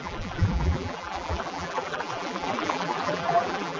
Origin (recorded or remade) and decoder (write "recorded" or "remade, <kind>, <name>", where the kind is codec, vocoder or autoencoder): remade, vocoder, BigVGAN v2